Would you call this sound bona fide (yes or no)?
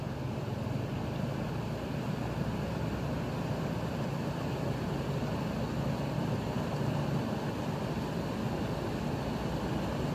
yes